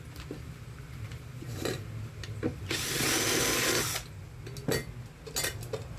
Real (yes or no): yes